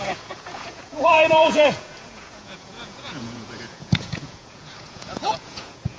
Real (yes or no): no